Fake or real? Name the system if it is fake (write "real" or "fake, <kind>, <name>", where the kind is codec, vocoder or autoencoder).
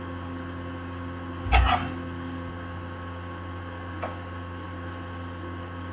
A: real